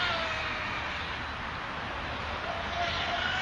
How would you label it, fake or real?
real